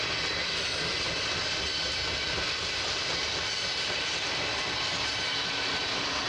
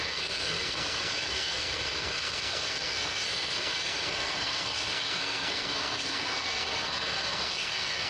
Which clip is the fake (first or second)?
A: second